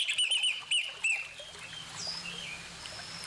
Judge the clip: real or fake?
real